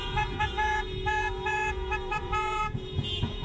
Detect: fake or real fake